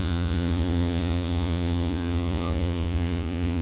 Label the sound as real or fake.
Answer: fake